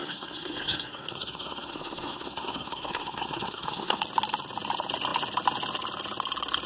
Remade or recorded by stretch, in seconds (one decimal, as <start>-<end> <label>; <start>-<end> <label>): 0.0-4.0 remade; 4.0-6.7 recorded